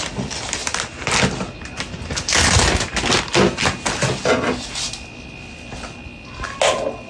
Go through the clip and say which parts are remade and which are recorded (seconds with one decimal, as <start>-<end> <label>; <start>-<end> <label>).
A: 0.0-7.1 recorded